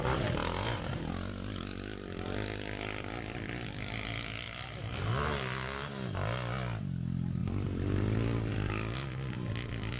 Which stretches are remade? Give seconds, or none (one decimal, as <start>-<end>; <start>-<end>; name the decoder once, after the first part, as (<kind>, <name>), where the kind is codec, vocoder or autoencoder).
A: 0.4-1.1 (vocoder, BigVGAN v2)